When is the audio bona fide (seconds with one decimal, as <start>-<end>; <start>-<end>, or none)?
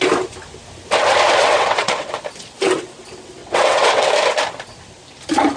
0.0-1.4; 2.2-3.4; 4.1-5.6